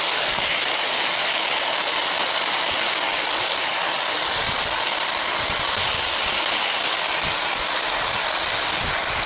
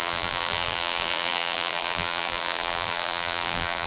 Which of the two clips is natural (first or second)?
first